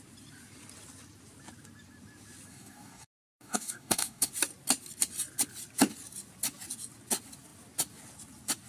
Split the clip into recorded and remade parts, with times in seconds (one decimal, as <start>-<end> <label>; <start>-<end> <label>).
0.0-2.5 recorded; 2.5-4.3 remade; 4.3-8.7 recorded